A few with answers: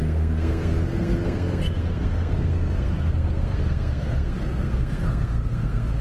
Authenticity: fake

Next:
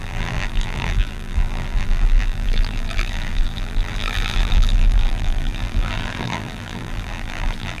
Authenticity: fake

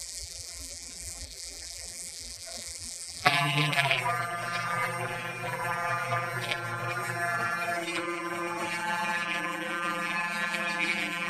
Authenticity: fake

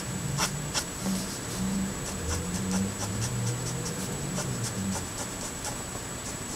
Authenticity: fake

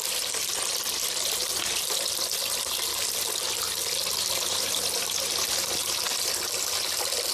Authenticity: real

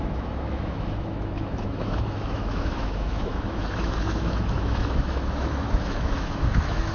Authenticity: fake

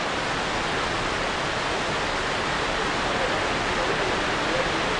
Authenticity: real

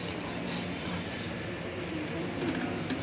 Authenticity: real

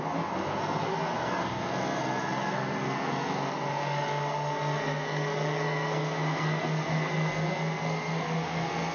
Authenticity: fake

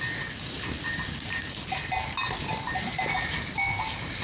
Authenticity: real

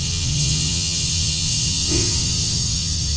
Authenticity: fake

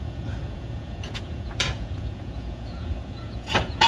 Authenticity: fake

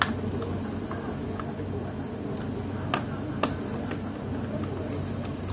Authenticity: real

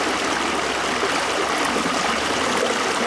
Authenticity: real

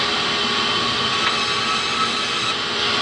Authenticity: real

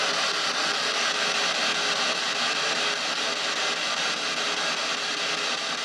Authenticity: real